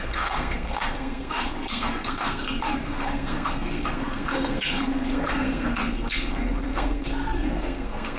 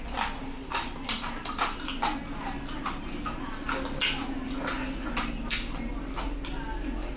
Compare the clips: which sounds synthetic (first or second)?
first